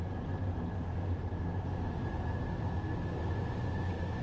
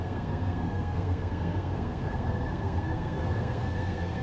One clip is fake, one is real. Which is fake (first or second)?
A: second